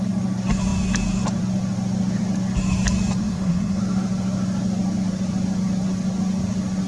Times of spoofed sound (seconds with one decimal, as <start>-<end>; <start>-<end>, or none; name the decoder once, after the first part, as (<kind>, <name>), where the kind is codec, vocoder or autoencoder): 3.2-3.8 (codec, SNAC)